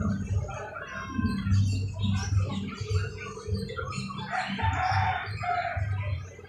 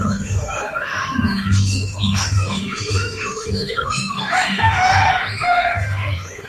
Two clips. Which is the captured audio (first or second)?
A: first